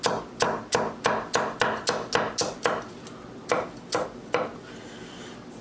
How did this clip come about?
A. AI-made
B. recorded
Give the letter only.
B